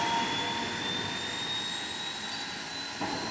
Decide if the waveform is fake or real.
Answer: real